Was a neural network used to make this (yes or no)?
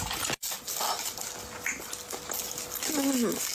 no